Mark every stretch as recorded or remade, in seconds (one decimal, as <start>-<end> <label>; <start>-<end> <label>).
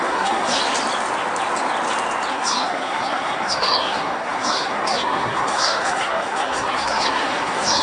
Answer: 0.0-0.6 remade; 0.6-2.3 recorded; 2.3-7.8 remade